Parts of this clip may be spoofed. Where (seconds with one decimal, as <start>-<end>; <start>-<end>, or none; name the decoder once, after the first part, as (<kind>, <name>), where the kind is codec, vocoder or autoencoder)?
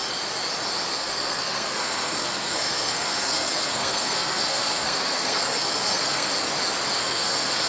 0.9-6.3 (codec, SNAC); 7.0-7.7